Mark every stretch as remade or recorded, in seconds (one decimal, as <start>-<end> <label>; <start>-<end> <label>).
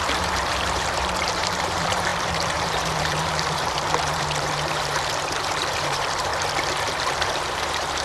0.0-6.3 remade; 6.3-7.0 recorded; 7.0-8.0 remade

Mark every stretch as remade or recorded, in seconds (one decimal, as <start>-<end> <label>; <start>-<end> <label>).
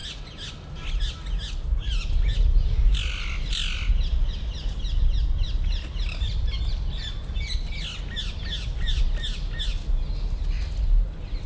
0.0-11.5 recorded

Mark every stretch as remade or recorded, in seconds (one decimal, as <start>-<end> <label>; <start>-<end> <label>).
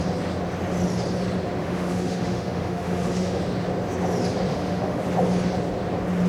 0.0-1.6 recorded; 1.6-3.4 remade; 3.4-4.5 recorded; 4.5-5.0 remade; 5.0-6.3 recorded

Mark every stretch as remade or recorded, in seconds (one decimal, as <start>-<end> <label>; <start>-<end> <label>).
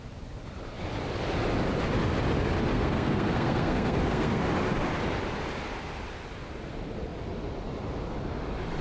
0.0-2.7 recorded; 2.7-4.4 remade; 4.4-8.8 recorded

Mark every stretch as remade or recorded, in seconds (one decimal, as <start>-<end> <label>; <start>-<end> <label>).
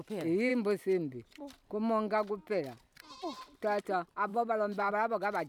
0.0-4.3 recorded; 4.3-4.9 remade; 4.9-5.5 recorded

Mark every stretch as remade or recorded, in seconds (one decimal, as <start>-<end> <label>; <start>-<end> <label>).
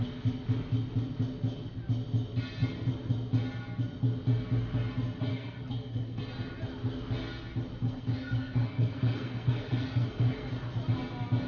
0.0-5.3 recorded; 5.3-6.2 remade; 6.2-7.8 recorded; 7.8-10.5 remade; 10.5-11.5 recorded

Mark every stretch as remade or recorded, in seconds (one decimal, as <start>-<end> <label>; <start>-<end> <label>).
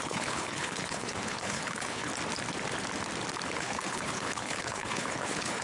0.0-2.1 remade; 2.1-3.6 recorded; 3.6-5.6 remade